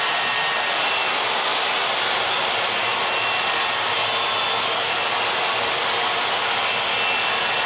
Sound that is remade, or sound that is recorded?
recorded